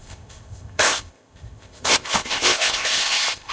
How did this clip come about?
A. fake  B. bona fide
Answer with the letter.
A